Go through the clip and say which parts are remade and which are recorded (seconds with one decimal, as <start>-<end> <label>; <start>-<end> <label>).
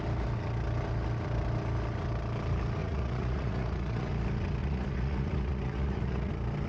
0.0-2.8 recorded; 2.8-4.1 remade; 4.1-4.6 recorded; 4.6-6.3 remade; 6.3-6.7 recorded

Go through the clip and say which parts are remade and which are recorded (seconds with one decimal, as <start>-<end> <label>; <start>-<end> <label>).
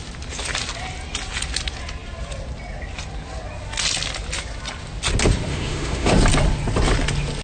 0.0-5.5 recorded; 5.5-6.1 remade; 6.1-7.4 recorded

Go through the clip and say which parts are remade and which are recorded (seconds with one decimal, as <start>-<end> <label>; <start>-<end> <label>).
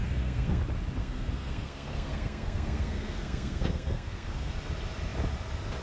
0.0-0.6 remade; 0.6-1.0 recorded; 1.0-4.5 remade; 4.5-5.8 recorded